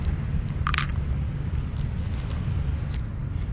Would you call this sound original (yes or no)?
yes